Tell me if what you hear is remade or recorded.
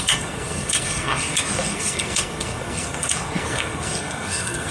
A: remade